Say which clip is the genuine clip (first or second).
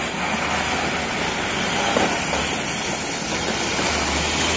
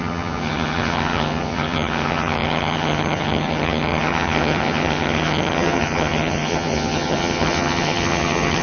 first